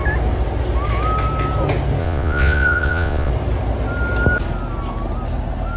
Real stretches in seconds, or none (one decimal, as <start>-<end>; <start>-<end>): 0.0-2.0; 3.3-5.8